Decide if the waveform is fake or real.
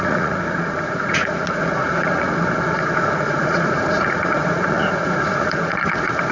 fake